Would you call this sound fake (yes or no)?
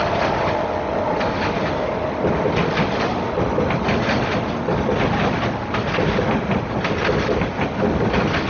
no